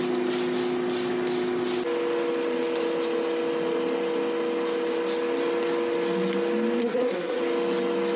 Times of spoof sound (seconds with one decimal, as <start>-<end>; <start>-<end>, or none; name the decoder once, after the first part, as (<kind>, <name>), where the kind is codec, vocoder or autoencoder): 6.8-7.4 (codec, SNAC)